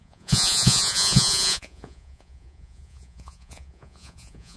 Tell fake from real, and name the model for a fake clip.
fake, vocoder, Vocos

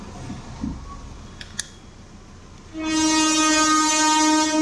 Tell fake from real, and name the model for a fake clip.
real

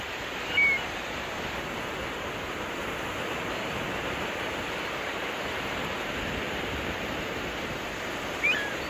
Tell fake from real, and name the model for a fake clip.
fake, vocoder, BigVGAN v2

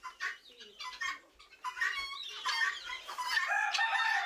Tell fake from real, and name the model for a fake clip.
real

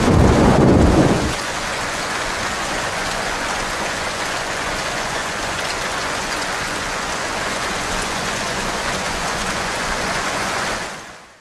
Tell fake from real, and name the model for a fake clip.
fake, vocoder, Vocos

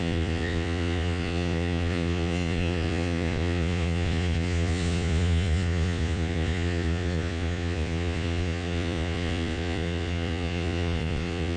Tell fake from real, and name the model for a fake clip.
fake, vocoder, Vocos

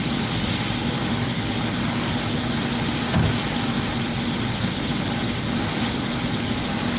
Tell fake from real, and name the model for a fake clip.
real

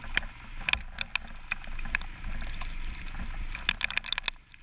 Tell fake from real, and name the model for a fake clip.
real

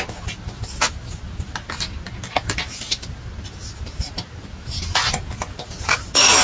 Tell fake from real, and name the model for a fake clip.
real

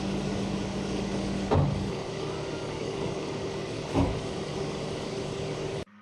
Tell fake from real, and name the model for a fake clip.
fake, codec, DAC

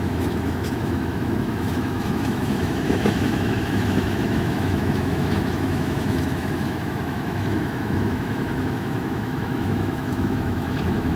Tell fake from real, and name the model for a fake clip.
fake, autoencoder, DAC-VAE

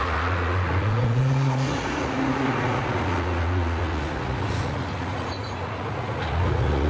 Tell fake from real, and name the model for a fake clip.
fake, vocoder, Vocos